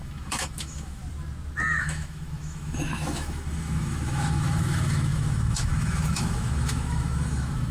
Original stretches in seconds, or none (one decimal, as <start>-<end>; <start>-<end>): 1.0-1.8